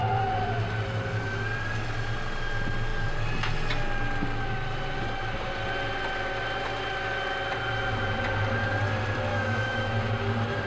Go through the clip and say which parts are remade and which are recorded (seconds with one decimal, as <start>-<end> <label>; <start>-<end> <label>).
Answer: 0.0-9.3 recorded; 9.3-10.1 remade; 10.1-10.7 recorded